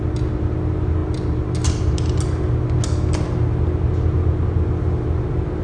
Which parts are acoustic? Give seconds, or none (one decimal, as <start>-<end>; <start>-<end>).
0.0-5.6